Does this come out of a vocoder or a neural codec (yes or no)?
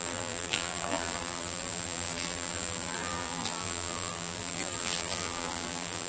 yes